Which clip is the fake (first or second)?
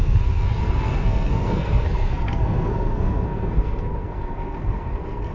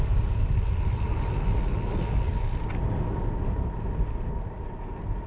first